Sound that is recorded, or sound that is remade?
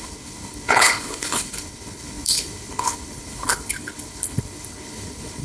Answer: remade